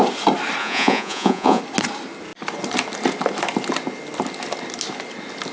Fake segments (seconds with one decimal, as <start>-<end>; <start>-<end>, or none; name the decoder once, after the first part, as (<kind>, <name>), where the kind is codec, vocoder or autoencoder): 0.6-1.6 (vocoder, Vocos)